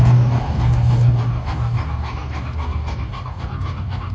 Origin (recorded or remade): remade